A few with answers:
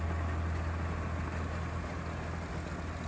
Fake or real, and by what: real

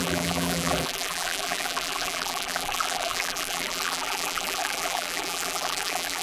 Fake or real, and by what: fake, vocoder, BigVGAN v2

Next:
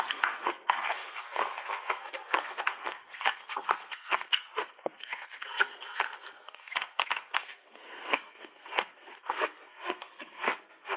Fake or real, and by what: fake, codec, SNAC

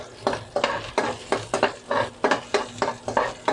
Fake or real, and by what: real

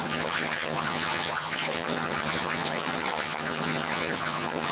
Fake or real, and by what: fake, vocoder, HiFi-GAN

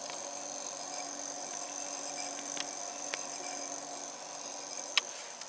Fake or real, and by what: real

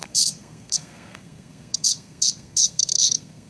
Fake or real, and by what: fake, codec, SNAC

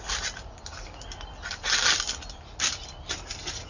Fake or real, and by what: real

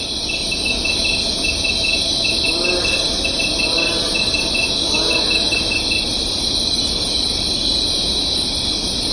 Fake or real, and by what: real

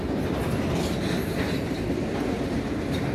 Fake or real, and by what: real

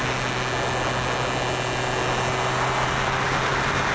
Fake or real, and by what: real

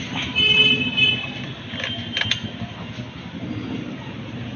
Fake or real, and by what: real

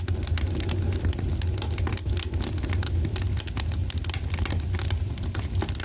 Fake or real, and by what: real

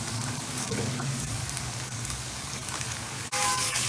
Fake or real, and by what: fake, codec, DAC